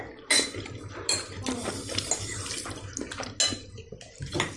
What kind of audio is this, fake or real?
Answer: real